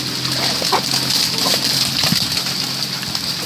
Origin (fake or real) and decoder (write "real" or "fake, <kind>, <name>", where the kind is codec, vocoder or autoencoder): real